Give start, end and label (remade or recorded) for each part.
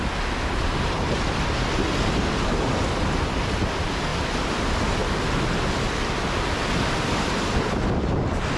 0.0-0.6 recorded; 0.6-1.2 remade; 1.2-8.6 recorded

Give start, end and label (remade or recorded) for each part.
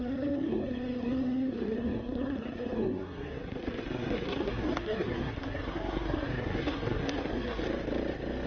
0.0-7.6 remade; 7.6-8.5 recorded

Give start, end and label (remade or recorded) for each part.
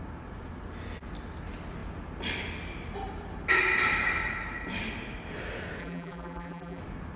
0.0-5.8 recorded; 5.8-6.8 remade; 6.8-7.2 recorded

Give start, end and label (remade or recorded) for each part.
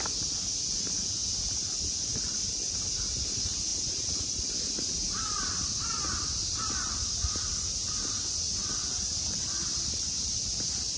0.0-11.0 recorded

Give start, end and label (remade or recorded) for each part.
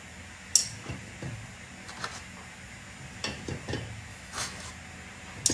0.0-4.1 recorded; 4.1-4.7 remade; 4.7-5.5 recorded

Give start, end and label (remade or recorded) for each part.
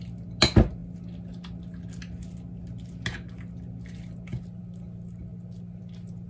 0.0-6.3 recorded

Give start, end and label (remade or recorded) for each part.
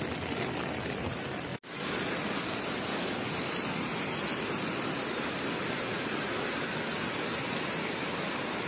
0.0-8.7 recorded